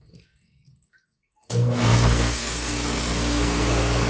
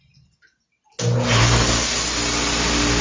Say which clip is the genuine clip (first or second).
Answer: second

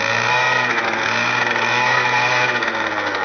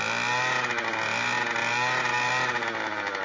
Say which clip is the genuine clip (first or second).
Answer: second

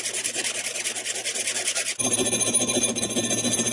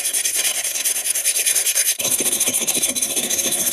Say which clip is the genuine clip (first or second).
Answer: first